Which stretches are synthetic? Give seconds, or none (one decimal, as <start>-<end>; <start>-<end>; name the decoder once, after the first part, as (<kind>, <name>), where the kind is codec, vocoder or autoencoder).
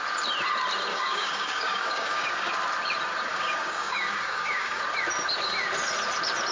0.9-2.5 (codec, DAC); 3.3-4.8